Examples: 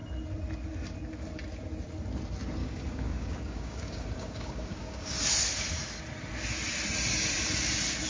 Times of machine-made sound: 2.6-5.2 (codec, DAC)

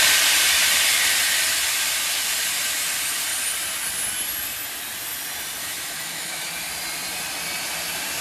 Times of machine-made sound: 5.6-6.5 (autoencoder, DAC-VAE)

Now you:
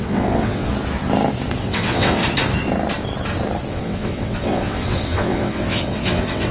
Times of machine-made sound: 0.0-0.7 (vocoder, WaveNeXt); 1.6-2.2; 3.7-6.5

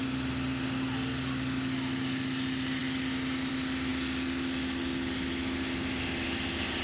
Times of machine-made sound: none

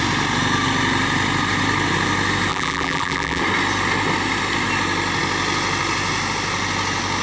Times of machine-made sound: 2.5-3.4 (vocoder, BigVGAN v2)